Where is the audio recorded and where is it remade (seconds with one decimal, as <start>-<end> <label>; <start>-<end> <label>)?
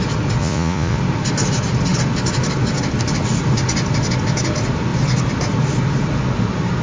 0.0-0.4 recorded; 0.4-1.0 remade; 1.0-6.8 recorded